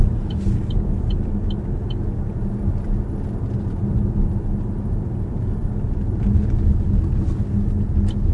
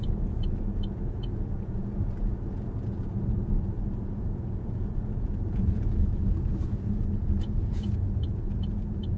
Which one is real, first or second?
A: first